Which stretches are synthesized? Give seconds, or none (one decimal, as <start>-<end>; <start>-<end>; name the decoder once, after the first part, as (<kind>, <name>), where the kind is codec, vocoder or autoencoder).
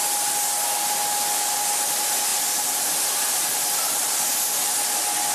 none